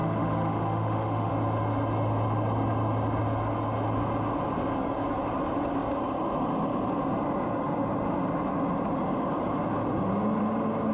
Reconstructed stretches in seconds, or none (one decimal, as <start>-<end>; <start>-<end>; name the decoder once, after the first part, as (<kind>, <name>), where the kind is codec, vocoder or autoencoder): 0.0-1.3 (autoencoder, DAC-VAE)